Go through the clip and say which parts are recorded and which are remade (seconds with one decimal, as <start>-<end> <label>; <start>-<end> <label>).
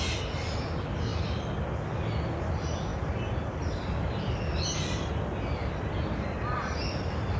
0.0-2.9 recorded; 2.9-4.3 remade; 4.3-7.4 recorded